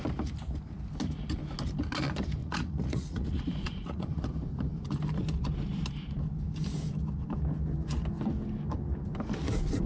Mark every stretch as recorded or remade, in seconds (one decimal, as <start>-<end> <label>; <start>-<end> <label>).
0.0-2.4 recorded; 2.4-4.2 remade; 4.2-9.9 recorded